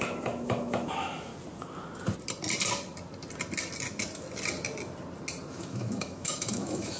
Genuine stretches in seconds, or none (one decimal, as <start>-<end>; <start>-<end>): 1.3-5.5